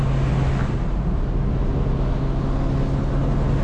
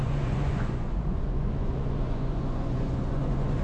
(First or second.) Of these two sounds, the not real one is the second